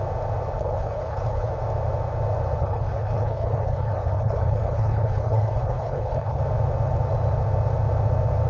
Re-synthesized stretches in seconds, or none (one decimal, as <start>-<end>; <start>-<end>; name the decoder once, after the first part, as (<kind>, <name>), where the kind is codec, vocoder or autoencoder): 0.6-1.5 (codec, HILCodec); 2.6-6.4